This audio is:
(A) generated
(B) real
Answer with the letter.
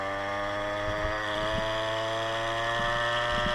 B